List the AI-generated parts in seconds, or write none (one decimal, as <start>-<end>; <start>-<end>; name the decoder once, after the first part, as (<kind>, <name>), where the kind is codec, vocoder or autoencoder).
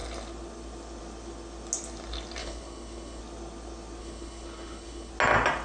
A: 2.4-3.2 (codec, HILCodec); 4.0-5.1